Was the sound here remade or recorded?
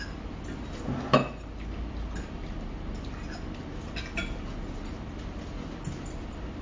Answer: recorded